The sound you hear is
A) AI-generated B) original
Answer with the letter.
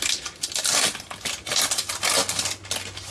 B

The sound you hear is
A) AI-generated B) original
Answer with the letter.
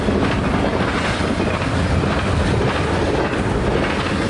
B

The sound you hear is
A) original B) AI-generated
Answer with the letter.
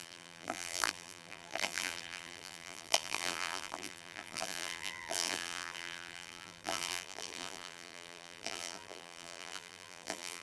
B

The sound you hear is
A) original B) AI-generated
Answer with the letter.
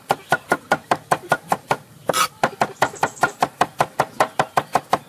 B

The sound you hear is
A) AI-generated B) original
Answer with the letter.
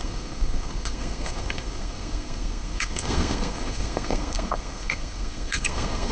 A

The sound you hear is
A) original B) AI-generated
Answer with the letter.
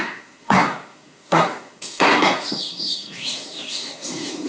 B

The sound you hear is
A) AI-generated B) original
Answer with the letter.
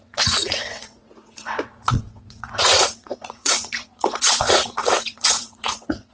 A